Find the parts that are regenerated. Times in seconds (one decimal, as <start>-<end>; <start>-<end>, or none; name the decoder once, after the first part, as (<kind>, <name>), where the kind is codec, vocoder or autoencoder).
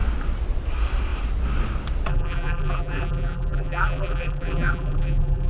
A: 2.1-5.5 (vocoder, BigVGAN v2)